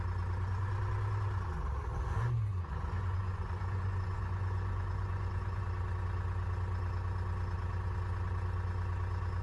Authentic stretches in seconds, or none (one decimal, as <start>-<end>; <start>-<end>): 0.0-2.5; 5.6-9.4